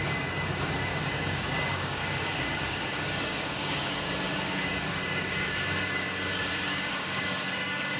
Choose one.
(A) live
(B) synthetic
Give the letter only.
B